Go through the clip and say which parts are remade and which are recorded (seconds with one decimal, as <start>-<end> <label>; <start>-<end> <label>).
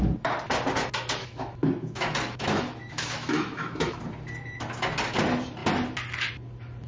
0.0-1.2 recorded; 1.2-4.0 remade; 4.0-6.9 recorded